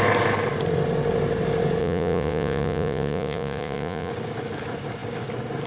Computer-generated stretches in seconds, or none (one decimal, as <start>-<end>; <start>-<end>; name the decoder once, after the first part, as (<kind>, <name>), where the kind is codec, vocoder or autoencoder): 1.8-4.1 (vocoder, Vocos)